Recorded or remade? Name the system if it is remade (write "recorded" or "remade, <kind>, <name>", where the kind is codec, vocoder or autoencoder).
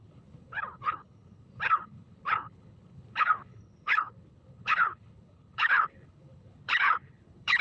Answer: remade, codec, HILCodec